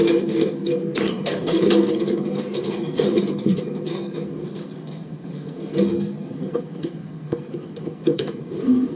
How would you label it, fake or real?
fake